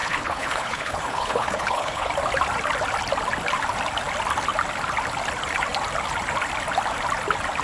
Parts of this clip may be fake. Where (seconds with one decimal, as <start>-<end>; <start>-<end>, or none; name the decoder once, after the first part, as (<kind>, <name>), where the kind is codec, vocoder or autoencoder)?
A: 0.0-2.1 (codec, HILCodec)